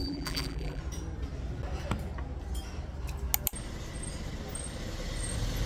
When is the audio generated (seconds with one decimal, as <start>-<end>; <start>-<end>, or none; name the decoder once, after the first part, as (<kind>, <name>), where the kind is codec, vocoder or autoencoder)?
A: 0.0-0.8 (vocoder, BigVGAN v2)